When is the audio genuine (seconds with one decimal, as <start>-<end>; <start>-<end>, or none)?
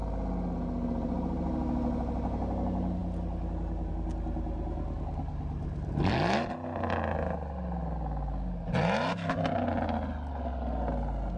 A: 0.0-11.4